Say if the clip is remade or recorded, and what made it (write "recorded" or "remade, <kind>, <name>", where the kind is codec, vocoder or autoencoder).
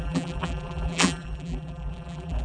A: remade, vocoder, BigVGAN v2